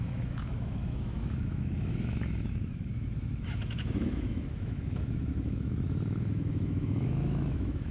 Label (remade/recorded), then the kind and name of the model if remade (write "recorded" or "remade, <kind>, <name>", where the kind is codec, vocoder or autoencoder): remade, autoencoder, DAC-VAE